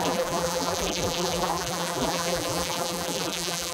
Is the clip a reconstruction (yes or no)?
yes